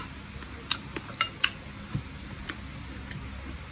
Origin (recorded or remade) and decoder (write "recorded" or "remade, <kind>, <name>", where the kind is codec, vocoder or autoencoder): recorded